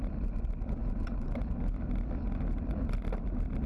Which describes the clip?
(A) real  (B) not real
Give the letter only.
A